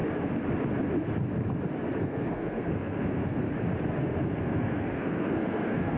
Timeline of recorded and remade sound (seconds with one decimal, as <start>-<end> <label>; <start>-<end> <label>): 0.0-2.0 recorded; 2.0-3.4 remade; 3.4-4.0 recorded; 4.0-6.0 remade